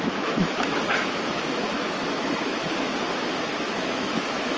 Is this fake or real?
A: fake